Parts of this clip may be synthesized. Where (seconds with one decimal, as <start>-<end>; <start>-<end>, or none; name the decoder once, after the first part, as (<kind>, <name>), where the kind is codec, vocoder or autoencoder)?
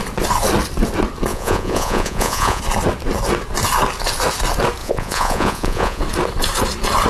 1.3-2.6 (vocoder, Vocos); 4.8-6.0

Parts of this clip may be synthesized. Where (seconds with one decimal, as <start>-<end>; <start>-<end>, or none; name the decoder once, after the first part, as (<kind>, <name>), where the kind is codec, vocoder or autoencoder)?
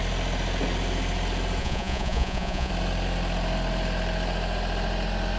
1.6-2.7 (vocoder, Vocos)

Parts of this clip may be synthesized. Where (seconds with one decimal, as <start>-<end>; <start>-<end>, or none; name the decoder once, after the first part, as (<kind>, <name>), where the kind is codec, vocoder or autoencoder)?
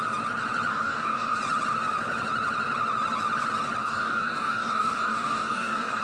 0.7-1.4 (codec, DAC); 3.8-6.0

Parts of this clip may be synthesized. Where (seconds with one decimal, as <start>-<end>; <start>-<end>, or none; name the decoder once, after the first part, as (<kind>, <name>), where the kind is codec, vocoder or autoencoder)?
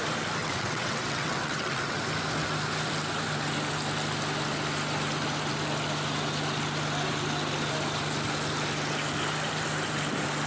0.4-2.0 (vocoder, WaveNeXt)